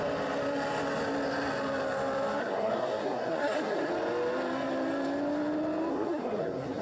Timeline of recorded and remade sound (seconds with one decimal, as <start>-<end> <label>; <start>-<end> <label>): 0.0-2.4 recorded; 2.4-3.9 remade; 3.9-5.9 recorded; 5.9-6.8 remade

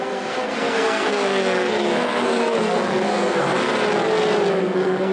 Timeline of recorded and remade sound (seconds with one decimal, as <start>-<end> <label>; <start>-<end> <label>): 0.0-3.7 remade; 3.7-4.5 recorded; 4.5-5.1 remade

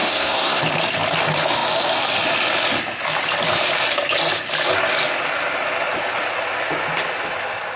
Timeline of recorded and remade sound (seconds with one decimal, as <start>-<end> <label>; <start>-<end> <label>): 0.0-0.6 remade; 0.6-7.8 recorded

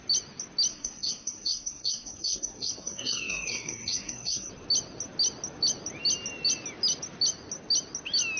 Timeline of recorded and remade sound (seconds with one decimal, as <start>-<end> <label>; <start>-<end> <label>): 0.0-0.7 recorded; 0.7-4.5 remade; 4.5-8.4 recorded

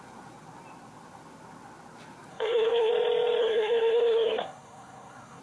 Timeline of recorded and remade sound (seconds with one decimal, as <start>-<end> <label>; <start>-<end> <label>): 0.0-2.3 recorded; 2.3-2.9 remade; 2.9-3.4 recorded; 3.4-5.4 remade

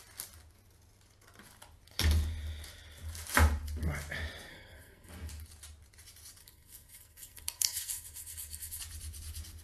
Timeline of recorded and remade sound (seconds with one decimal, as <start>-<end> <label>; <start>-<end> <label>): 0.0-4.5 recorded; 4.5-5.1 remade; 5.1-6.4 recorded; 6.4-8.8 remade; 8.8-9.6 recorded

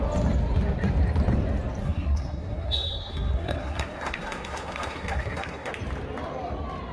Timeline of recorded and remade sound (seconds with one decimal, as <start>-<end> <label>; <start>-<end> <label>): 0.0-1.8 recorded; 1.8-5.7 remade; 5.7-6.9 recorded

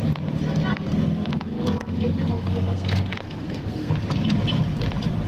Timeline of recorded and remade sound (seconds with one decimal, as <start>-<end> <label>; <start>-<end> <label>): 0.0-0.7 recorded; 0.7-3.9 remade; 3.9-5.3 recorded